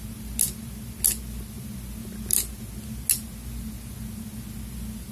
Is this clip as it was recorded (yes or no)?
yes